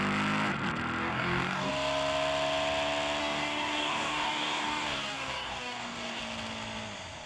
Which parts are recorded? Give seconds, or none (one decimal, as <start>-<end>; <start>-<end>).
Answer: 0.0-1.0; 1.7-3.2; 6.2-7.3